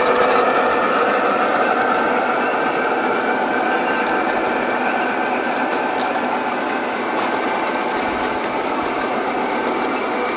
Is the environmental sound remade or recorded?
recorded